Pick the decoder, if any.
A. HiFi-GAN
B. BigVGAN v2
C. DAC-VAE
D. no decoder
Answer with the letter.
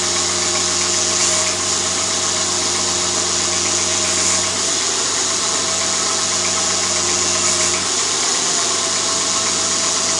D